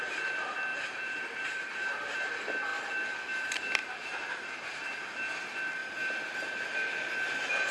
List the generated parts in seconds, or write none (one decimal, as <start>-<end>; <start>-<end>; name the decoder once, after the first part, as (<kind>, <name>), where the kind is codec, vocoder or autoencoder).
0.7-2.3 (vocoder, BigVGAN v2); 3.8-4.9

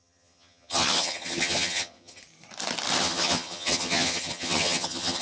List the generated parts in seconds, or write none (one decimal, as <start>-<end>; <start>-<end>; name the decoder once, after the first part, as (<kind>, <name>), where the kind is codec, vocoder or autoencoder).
0.0-2.2 (vocoder, HiFi-GAN); 3.0-5.2

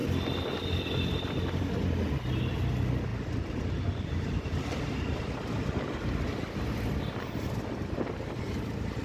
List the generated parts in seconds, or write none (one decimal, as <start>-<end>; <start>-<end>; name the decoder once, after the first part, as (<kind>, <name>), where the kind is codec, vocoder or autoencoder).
3.1-4.8 (vocoder, BigVGAN v2)

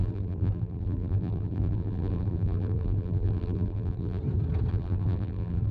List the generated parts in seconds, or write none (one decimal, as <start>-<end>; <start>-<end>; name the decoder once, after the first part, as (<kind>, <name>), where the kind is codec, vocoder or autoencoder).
0.0-4.2 (vocoder, BigVGAN v2); 4.7-5.7

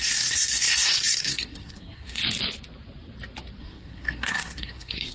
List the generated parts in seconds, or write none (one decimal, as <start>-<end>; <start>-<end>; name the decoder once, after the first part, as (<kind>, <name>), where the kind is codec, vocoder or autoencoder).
0.0-2.2 (codec, SNAC); 3.6-5.1

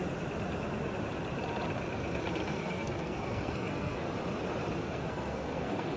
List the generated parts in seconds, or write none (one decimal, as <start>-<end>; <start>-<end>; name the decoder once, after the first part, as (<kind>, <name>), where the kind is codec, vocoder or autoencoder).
2.5-4.1 (codec, SNAC); 4.8-6.0